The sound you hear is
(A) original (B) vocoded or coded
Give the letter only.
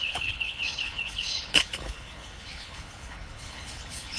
B